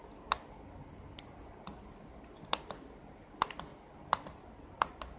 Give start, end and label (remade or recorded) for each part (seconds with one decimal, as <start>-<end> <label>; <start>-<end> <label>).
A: 0.0-5.2 recorded